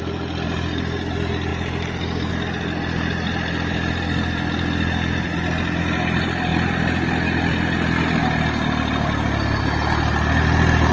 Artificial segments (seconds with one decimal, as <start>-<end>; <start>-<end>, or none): none